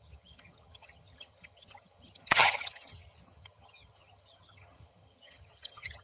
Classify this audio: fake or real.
fake